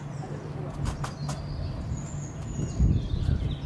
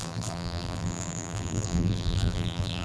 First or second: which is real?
first